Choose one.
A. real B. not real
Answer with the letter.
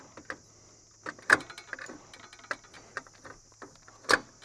A